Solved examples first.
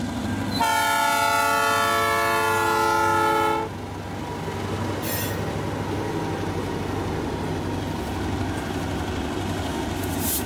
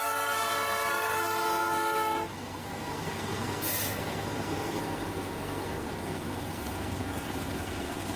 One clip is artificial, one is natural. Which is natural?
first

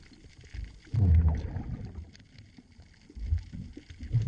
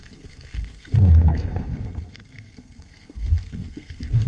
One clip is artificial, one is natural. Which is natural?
first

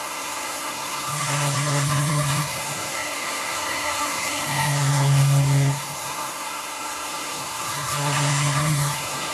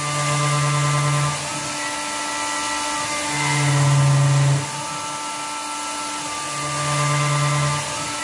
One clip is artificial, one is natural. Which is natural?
second